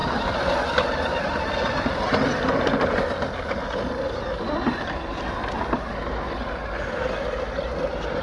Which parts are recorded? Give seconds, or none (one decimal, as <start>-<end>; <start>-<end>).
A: 0.0-4.9; 6.4-8.2